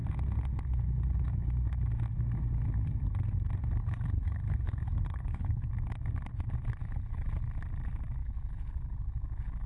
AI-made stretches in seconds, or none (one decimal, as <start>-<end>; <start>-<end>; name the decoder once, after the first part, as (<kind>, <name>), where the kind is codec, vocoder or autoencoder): 3.8-5.7 (codec, HILCodec); 6.8-7.3; 8.2-9.7

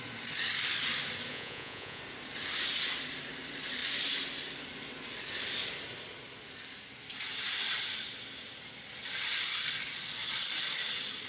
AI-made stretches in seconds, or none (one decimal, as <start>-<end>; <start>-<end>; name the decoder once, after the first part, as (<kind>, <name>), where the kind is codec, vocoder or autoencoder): 1.3-2.0 (vocoder, Vocos)

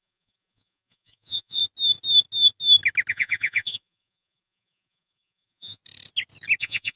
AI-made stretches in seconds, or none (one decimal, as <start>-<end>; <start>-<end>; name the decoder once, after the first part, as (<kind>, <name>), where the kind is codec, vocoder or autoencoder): 0.0-1.6 (vocoder, Vocos); 3.1-5.8; 6.6-7.0